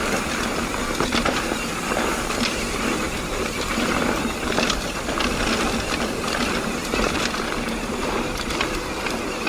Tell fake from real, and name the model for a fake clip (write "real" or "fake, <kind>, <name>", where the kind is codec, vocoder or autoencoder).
fake, vocoder, BigVGAN v2